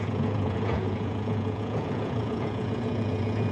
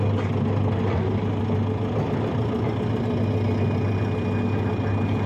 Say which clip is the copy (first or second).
first